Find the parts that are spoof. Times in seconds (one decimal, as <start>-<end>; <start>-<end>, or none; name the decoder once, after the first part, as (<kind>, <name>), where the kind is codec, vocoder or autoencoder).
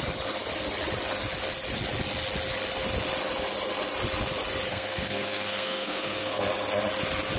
4.7-6.4 (codec, SNAC)